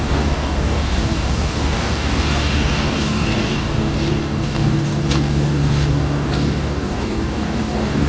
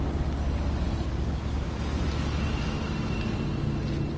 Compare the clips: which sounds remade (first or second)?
first